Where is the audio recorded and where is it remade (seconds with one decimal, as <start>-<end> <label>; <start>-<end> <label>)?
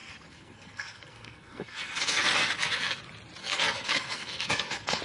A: 0.0-3.0 remade; 3.0-3.4 recorded; 3.4-5.0 remade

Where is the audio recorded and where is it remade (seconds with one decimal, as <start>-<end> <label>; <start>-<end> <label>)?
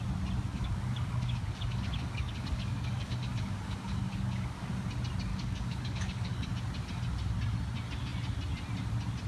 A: 0.0-0.5 recorded; 0.5-4.7 remade; 4.7-5.3 recorded; 5.3-6.5 remade; 6.5-9.3 recorded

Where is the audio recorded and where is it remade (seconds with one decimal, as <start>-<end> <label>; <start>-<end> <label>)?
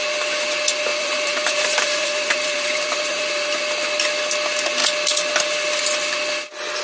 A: 0.0-0.9 recorded; 0.9-3.6 remade; 3.6-6.8 recorded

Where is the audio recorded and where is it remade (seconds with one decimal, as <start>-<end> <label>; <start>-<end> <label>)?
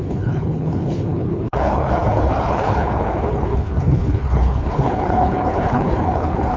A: 0.0-6.6 remade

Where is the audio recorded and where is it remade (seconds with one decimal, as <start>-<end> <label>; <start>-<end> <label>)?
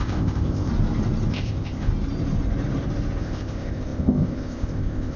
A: 0.0-0.7 remade; 0.7-1.3 recorded; 1.3-1.9 remade; 1.9-3.2 recorded; 3.2-5.2 remade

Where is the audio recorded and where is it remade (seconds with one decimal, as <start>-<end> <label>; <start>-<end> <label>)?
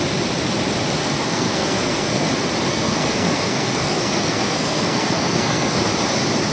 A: 0.0-1.0 recorded; 1.0-2.3 remade; 2.3-2.7 recorded; 2.7-5.9 remade; 5.9-6.5 recorded